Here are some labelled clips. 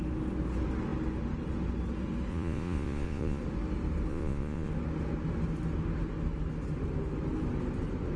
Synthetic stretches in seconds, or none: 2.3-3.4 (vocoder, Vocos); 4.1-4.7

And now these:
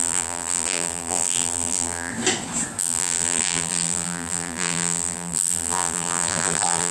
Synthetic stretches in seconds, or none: 0.0-2.1 (vocoder, BigVGAN v2); 2.8-6.9

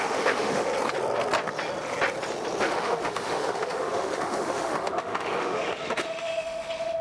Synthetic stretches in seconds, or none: 0.0-0.7 (autoencoder, DAC-VAE); 2.6-7.0